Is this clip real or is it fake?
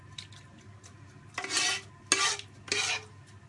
real